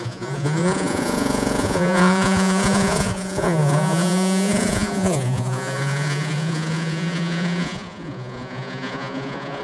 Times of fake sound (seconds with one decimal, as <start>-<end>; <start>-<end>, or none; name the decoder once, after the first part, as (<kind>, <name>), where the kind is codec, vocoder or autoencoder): 0.0-9.6 (vocoder, Vocos)